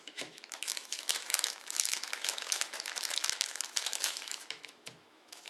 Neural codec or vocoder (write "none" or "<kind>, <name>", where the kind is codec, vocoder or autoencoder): autoencoder, DAC-VAE